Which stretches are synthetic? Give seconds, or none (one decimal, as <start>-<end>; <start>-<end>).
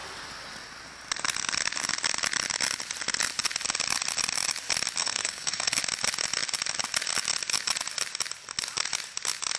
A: 5.0-5.8